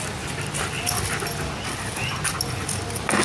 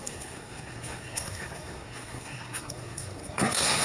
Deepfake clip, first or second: second